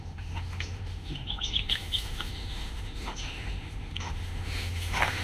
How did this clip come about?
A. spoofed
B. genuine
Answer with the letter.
A